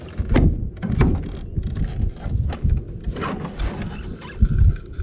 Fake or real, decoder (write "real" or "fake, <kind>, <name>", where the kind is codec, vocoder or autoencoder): real